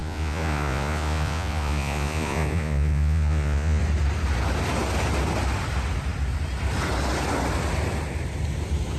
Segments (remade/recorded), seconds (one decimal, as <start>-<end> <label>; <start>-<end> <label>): 0.0-3.8 remade; 3.8-9.0 recorded